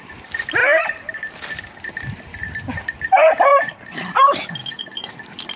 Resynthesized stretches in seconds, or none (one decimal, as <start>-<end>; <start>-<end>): 4.6-5.1